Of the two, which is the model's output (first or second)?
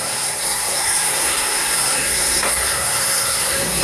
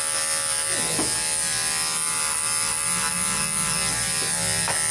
first